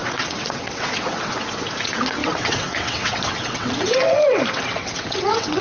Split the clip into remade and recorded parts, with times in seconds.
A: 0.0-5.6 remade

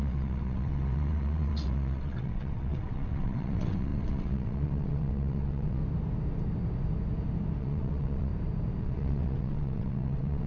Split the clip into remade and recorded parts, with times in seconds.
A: 0.0-5.8 remade; 5.8-7.6 recorded; 7.6-8.3 remade; 8.3-8.8 recorded; 8.8-10.5 remade

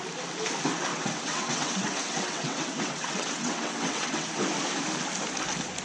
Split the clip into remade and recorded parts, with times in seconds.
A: 0.0-0.9 recorded; 0.9-4.4 remade; 4.4-5.8 recorded

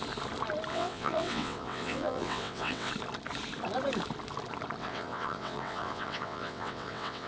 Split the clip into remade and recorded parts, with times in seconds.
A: 0.0-0.7 recorded; 0.7-2.9 remade; 2.9-4.8 recorded; 4.8-7.3 remade